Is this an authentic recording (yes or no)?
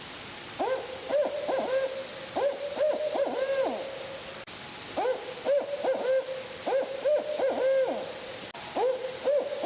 yes